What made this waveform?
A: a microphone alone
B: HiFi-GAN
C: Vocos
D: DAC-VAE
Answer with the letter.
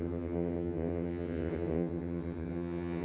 B